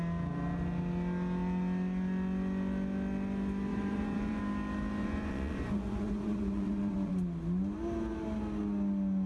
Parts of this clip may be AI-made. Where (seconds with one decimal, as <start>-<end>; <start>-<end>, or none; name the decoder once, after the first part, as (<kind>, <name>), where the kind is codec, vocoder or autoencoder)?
3.7-4.4 (vocoder, Vocos); 5.0-7.1